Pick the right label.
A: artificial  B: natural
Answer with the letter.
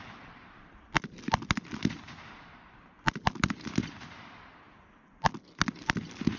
B